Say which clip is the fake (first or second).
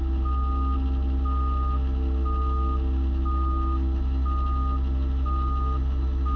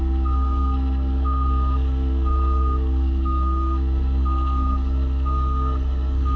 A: second